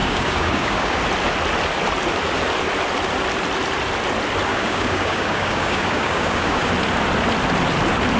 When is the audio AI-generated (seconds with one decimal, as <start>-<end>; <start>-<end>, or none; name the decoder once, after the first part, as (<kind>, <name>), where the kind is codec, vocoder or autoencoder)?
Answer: 0.0-1.0 (codec, DAC); 4.5-6.7